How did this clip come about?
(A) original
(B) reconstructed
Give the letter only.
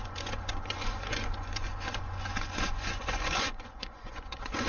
B